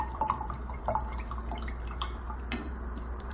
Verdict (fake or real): fake